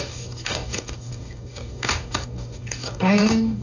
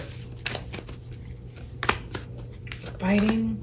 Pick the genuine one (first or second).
second